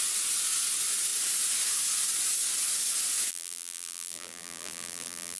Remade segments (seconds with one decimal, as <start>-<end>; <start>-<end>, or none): 3.3-5.4

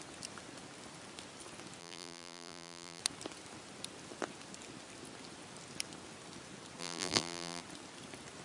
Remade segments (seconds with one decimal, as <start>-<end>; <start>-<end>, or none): 1.8-3.0; 6.8-7.6